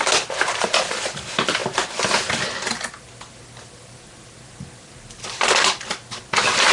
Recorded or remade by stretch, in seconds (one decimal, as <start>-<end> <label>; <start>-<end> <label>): 0.0-6.7 recorded